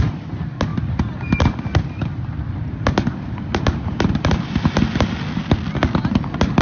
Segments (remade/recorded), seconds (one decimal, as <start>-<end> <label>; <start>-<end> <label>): 0.0-6.6 recorded